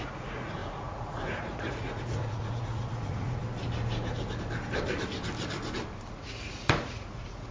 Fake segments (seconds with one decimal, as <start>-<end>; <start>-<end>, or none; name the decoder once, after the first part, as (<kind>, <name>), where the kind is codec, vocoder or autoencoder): 0.0-3.4 (vocoder, Vocos); 6.1-7.5